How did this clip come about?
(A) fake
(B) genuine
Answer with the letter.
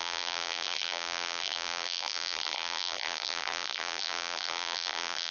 A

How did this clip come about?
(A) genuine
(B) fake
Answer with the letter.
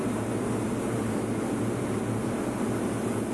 A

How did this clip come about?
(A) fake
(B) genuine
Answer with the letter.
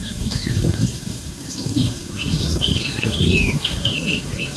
A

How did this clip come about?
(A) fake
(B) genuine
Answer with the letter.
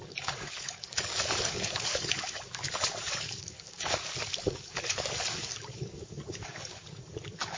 A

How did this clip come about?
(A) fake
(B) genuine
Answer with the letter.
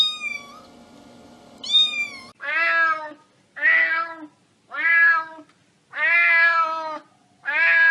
B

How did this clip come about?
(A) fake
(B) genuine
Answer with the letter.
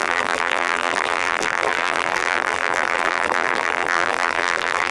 A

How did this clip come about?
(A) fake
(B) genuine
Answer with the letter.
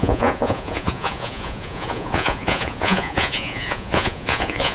A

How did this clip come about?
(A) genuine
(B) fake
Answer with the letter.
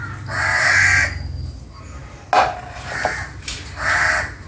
A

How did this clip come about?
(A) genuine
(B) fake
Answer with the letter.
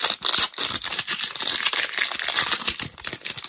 A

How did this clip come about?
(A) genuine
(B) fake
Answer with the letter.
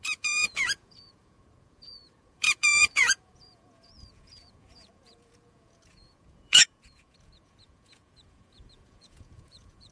B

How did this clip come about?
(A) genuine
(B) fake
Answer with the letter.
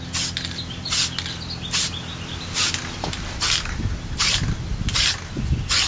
A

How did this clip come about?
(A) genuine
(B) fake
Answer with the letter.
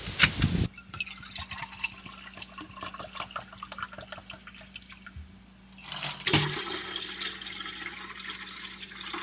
A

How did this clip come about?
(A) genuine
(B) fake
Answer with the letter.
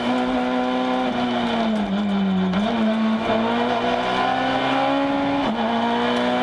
A